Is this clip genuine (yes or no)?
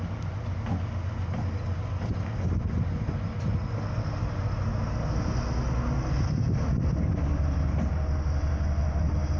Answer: yes